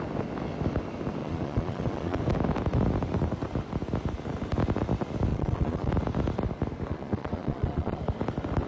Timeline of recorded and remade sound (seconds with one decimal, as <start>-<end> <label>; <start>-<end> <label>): 0.0-1.2 recorded; 1.2-2.2 remade; 2.2-5.3 recorded; 5.3-5.9 remade; 5.9-6.9 recorded; 6.9-8.0 remade; 8.0-8.7 recorded